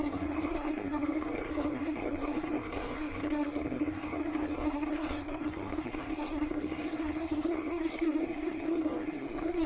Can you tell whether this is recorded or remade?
remade